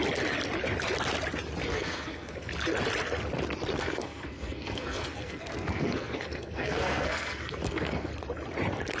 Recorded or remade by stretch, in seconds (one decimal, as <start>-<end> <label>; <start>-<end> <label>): 0.0-1.7 recorded; 1.7-2.5 remade; 2.5-3.7 recorded; 3.7-8.1 remade; 8.1-9.0 recorded